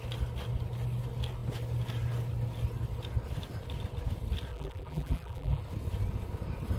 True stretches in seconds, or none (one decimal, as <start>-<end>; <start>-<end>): 0.0-4.5; 5.6-6.8